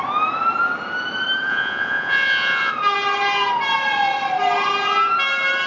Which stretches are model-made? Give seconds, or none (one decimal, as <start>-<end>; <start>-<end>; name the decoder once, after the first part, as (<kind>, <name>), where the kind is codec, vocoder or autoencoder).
1.5-2.7 (vocoder, Vocos)